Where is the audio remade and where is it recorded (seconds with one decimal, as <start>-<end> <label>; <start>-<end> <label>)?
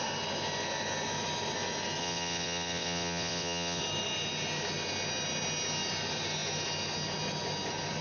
0.0-2.0 recorded; 2.0-3.8 remade; 3.8-8.0 recorded